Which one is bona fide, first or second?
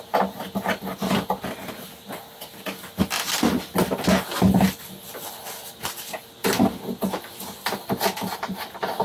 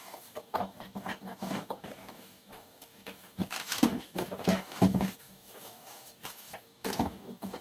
first